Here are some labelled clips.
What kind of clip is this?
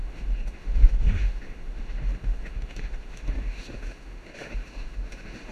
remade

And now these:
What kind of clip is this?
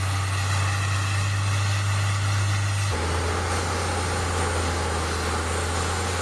recorded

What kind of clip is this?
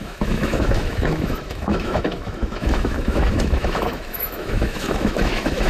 remade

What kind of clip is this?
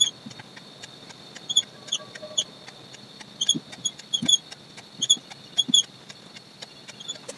recorded